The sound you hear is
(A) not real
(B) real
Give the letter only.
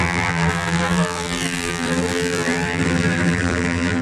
A